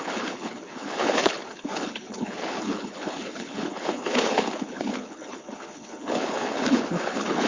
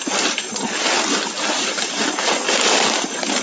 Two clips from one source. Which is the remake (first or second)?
first